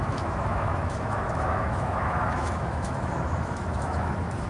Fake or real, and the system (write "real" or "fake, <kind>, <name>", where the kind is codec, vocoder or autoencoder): fake, autoencoder, DAC-VAE